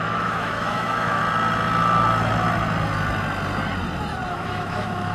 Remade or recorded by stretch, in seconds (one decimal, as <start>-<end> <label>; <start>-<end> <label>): 0.0-1.2 remade; 1.2-4.3 recorded; 4.3-5.1 remade